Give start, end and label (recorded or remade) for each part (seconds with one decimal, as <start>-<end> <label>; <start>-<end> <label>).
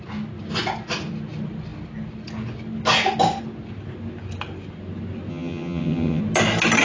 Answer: 0.0-5.3 recorded; 5.3-6.2 remade; 6.2-6.8 recorded